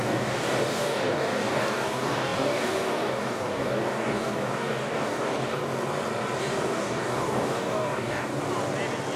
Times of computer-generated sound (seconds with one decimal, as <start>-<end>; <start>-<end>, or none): 0.0-5.6; 6.4-8.3